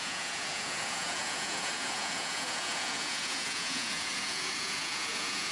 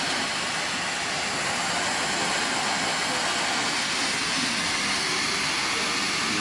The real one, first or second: second